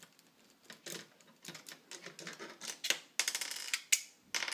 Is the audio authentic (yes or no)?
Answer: yes